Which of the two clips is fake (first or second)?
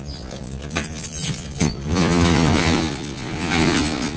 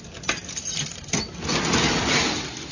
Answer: first